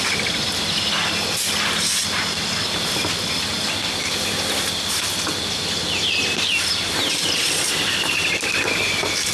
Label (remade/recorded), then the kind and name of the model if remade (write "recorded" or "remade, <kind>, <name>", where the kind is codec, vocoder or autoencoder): recorded